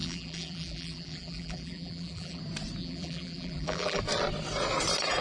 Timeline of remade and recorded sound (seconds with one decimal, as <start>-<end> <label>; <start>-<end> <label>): 0.0-2.4 remade; 2.4-2.8 recorded; 2.8-4.0 remade; 4.0-5.2 recorded